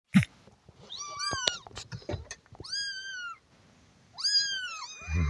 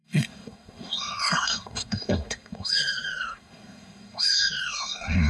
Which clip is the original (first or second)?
first